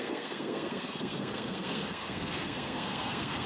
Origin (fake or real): fake